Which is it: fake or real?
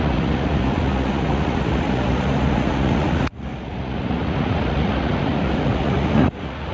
fake